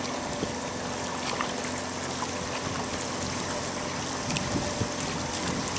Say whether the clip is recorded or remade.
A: recorded